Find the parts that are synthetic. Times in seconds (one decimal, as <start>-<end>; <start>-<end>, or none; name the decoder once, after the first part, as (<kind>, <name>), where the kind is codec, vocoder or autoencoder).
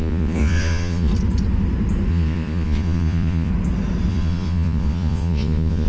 0.0-1.1 (vocoder, Vocos); 2.1-3.5; 4.1-5.9